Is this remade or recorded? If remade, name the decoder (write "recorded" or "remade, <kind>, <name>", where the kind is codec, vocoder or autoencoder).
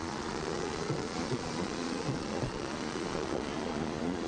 remade, vocoder, Vocos